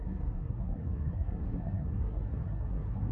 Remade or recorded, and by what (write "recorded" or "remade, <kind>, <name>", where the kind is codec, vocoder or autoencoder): remade, codec, SNAC